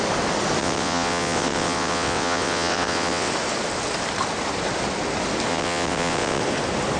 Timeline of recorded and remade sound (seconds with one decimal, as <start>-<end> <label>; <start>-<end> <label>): 0.0-0.6 recorded; 0.6-3.3 remade; 3.3-5.5 recorded; 5.5-6.4 remade; 6.4-7.0 recorded

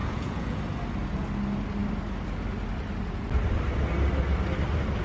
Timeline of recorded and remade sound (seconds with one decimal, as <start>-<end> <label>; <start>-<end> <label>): 0.0-0.6 remade; 0.6-5.0 recorded

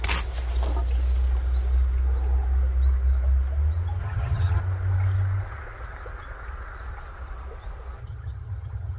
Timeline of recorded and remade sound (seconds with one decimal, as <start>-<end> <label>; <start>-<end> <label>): 0.0-4.0 recorded; 4.0-4.6 remade; 4.6-8.0 recorded; 8.0-9.0 remade

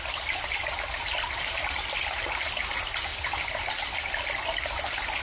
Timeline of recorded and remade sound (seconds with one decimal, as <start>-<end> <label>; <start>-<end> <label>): 0.0-5.2 recorded

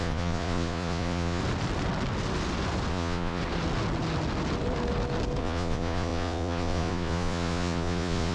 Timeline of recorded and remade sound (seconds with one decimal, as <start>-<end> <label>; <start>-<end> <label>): 0.0-1.4 remade; 1.4-2.9 recorded; 2.9-3.4 remade; 3.4-5.4 recorded; 5.4-8.3 remade